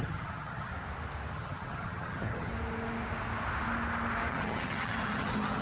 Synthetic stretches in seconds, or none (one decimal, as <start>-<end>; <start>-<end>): 0.0-0.7; 1.3-2.5; 4.3-5.6